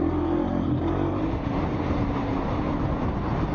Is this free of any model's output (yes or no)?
no